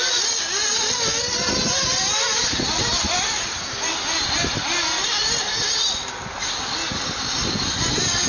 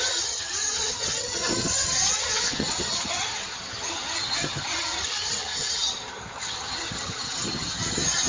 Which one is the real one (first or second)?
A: first